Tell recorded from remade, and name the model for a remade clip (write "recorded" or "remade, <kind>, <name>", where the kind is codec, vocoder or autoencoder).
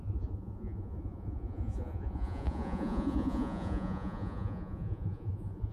remade, vocoder, Vocos